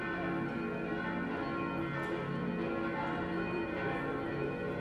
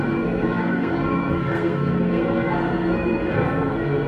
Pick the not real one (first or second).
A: second